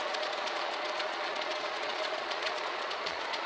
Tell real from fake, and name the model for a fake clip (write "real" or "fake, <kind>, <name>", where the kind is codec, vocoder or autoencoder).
fake, vocoder, Vocos